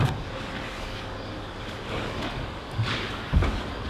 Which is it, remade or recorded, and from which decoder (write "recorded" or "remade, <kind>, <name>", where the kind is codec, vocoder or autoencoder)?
remade, codec, DAC